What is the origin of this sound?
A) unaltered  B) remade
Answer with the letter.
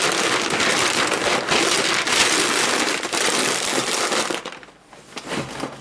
A